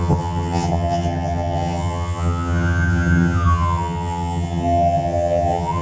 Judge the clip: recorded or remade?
remade